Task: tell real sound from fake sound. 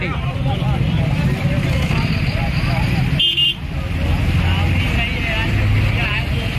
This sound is real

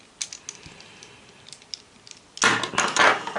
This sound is real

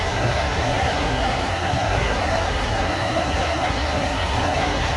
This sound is fake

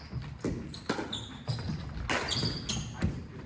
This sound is real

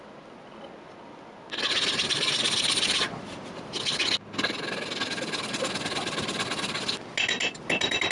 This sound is real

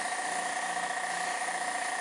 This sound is fake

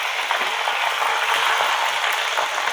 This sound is real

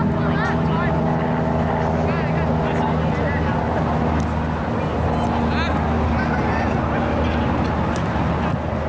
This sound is real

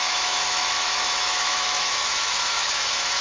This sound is fake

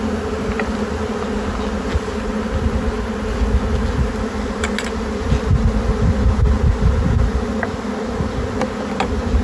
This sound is real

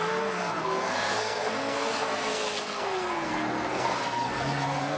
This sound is fake